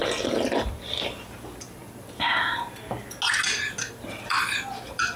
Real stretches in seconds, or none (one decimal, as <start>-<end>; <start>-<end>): 0.0-1.2; 1.8-3.8